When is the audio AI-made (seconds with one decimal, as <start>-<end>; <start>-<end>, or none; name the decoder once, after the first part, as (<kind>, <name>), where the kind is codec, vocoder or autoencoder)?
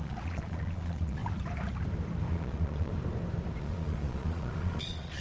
0.0-1.2 (vocoder, Vocos); 2.3-2.9; 3.6-5.2